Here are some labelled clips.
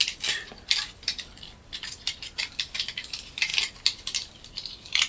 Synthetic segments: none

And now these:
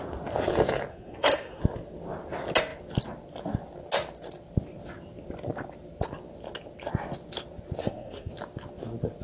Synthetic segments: 0.9-1.6 (codec, SNAC); 7.8-8.3

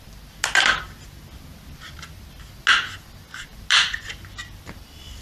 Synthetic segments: none

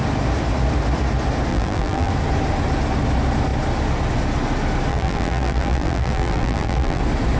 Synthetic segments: 1.5-2.1 (vocoder, BigVGAN v2); 4.9-7.0

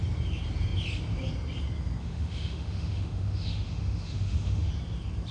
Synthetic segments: 2.0-4.7 (autoencoder, DAC-VAE)

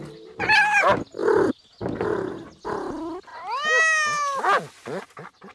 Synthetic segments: none